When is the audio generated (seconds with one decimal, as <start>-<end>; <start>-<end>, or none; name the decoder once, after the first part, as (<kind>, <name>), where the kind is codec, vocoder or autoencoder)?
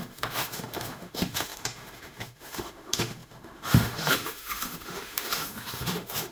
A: 0.0-6.3 (autoencoder, DAC-VAE)